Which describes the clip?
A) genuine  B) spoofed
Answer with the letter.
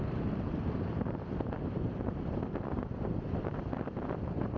B